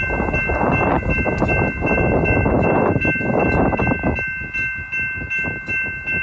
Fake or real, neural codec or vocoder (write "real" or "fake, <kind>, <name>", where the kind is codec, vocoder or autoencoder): real